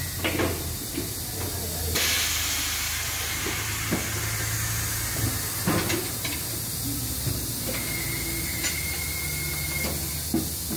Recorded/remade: recorded